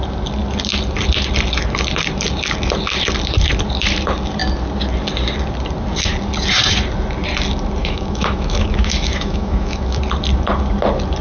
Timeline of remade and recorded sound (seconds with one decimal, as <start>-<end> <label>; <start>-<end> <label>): 0.0-7.8 recorded; 7.8-10.0 remade; 10.0-11.2 recorded